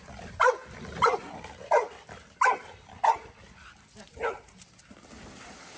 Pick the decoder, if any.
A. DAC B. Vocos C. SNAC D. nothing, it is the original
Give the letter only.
D